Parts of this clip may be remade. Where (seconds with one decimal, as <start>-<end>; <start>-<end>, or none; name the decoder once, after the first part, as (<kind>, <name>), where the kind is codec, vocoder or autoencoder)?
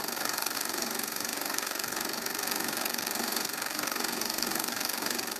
0.0-5.4 (codec, DAC)